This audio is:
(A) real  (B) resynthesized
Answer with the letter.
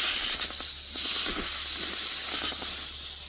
A